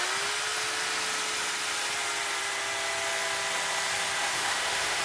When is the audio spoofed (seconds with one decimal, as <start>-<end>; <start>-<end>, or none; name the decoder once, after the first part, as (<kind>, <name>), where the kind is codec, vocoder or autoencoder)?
4.3-5.0 (autoencoder, DAC-VAE)

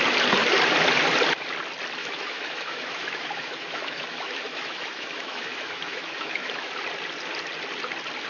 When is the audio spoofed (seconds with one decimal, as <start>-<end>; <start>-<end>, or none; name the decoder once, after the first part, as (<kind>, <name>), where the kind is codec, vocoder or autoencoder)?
2.0-6.7 (autoencoder, DAC-VAE)

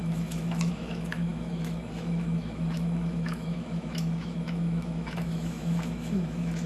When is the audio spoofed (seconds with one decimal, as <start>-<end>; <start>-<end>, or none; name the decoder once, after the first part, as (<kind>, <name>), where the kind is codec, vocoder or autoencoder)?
0.0-6.7 (autoencoder, DAC-VAE)